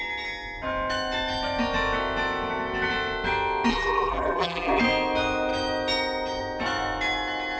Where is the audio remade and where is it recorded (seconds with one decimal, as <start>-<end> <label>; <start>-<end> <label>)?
0.0-3.7 recorded; 3.7-4.8 remade; 4.8-7.6 recorded